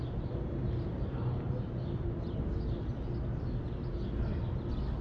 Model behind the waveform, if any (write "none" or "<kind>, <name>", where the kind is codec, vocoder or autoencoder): none